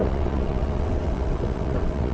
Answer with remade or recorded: remade